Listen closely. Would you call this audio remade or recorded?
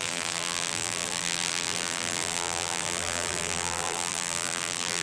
remade